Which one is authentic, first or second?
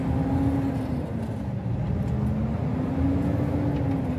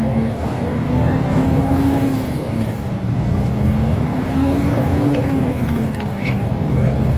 first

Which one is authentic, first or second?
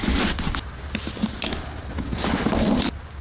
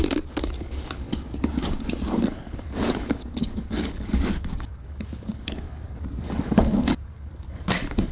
first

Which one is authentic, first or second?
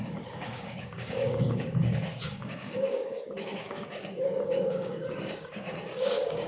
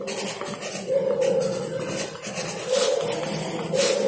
second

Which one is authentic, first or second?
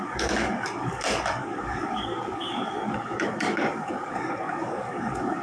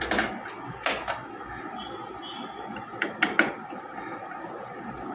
second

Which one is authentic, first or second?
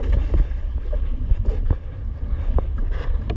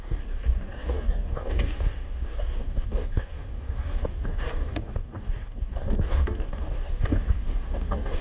first